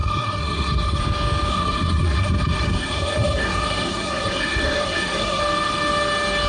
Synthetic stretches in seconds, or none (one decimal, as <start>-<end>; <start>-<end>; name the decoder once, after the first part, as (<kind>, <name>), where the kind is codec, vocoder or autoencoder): 0.0-1.0 (codec, SNAC); 1.5-5.4